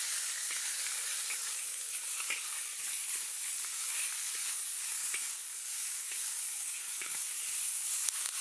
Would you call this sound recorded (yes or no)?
no